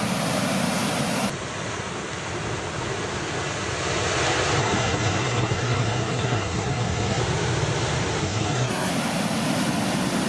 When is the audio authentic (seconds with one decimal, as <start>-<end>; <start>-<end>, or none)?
0.0-4.6; 7.2-8.2; 8.9-10.3